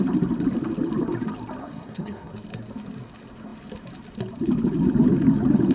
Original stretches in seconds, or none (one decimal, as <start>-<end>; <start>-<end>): 0.0-1.6; 2.3-5.7